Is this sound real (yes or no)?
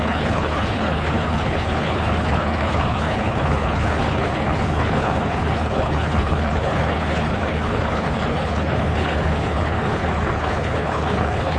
no